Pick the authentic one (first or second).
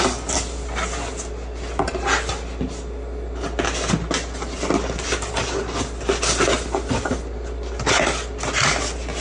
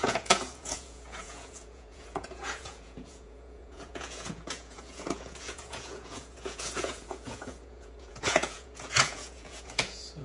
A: first